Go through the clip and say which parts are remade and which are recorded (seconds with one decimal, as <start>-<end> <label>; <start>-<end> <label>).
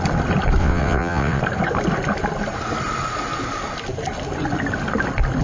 0.0-0.6 recorded; 0.6-1.4 remade; 1.4-5.4 recorded